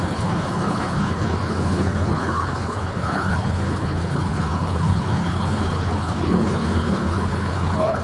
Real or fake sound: fake